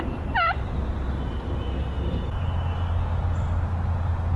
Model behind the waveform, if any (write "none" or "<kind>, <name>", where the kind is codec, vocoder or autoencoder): none